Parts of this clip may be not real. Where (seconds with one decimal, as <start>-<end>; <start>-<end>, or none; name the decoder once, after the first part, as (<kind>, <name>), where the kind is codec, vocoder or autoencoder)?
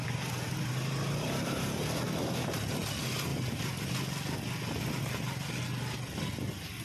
3.3-3.8 (vocoder, BigVGAN v2)